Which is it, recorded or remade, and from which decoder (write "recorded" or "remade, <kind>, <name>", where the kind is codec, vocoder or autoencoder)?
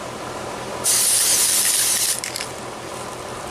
recorded